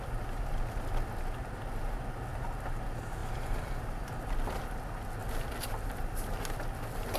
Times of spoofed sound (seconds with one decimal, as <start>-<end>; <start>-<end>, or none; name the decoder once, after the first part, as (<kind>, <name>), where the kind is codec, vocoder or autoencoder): none